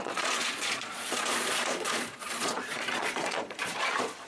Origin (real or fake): fake